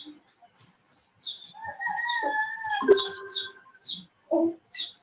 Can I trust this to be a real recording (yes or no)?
yes